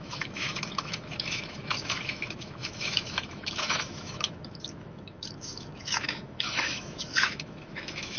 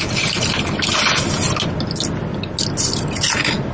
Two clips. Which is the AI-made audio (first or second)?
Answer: first